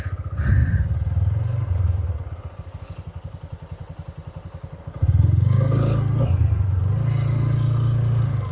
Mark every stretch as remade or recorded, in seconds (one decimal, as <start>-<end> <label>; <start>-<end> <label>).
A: 0.0-8.5 recorded